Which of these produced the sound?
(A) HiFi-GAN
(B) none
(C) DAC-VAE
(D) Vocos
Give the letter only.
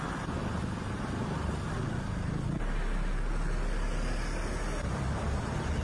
B